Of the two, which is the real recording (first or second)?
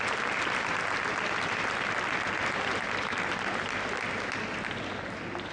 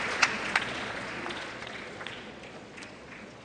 first